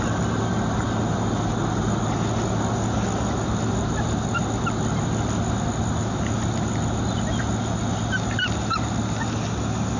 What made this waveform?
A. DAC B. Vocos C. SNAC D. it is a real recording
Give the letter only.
D